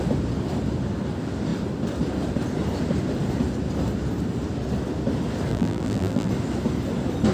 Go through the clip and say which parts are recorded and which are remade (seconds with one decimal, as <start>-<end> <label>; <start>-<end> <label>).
0.0-5.5 recorded; 5.5-6.3 remade; 6.3-7.3 recorded